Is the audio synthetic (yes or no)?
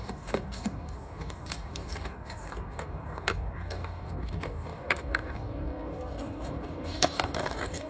yes